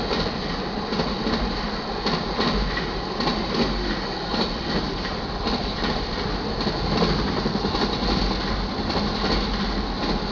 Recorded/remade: recorded